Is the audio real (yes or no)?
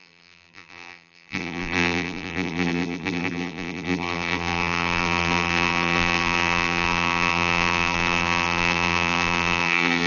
no